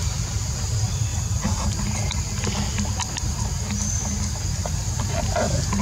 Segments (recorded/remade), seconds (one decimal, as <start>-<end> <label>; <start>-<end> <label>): 0.0-1.1 recorded; 1.1-1.9 remade; 1.9-4.6 recorded; 4.6-5.8 remade